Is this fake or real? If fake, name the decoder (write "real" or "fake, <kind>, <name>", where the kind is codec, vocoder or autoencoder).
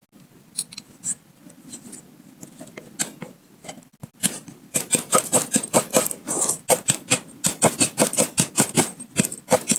real